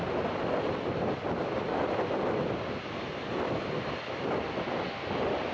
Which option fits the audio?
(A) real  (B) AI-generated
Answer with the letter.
A